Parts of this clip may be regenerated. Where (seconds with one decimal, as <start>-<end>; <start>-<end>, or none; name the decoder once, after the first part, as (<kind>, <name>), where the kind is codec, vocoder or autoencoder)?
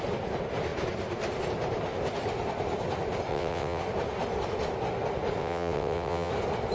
3.3-3.8 (vocoder, WaveNeXt); 5.4-6.3